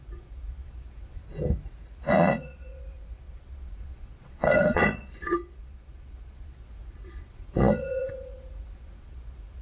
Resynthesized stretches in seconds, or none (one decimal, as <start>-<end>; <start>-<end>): 0.0-1.2; 2.0-9.6